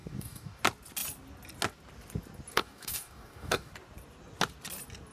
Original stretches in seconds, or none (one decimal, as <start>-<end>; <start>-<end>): 0.6-2.5; 3.7-5.1